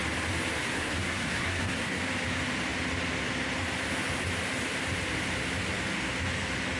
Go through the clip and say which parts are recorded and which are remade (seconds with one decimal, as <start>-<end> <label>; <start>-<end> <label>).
0.0-0.6 recorded; 0.6-2.0 remade; 2.0-6.8 recorded